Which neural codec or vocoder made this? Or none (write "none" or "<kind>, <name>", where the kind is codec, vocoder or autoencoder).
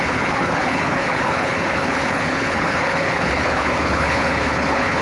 codec, HILCodec